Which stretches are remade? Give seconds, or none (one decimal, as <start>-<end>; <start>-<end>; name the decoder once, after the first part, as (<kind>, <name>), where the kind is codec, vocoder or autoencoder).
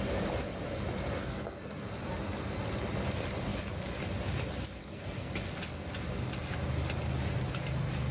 1.2-1.8 (codec, SNAC); 4.8-5.3